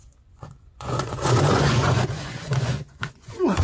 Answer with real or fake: fake